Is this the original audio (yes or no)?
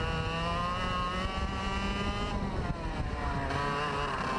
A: yes